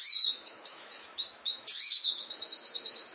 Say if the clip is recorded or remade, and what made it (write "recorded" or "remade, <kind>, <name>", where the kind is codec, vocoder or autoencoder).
remade, autoencoder, DAC-VAE